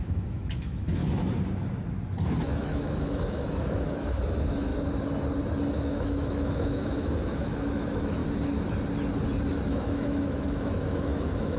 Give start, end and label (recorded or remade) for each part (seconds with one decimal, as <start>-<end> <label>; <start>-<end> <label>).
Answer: 0.0-1.0 remade; 1.0-2.5 recorded; 2.5-4.7 remade; 4.7-5.7 recorded; 5.7-8.2 remade; 8.2-9.7 recorded; 9.7-11.6 remade